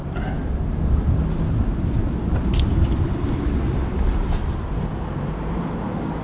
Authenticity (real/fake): real